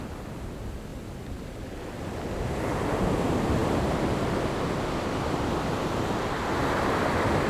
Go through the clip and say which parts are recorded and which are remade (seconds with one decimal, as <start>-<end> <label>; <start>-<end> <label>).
0.0-7.5 recorded